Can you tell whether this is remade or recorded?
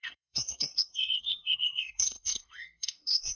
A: remade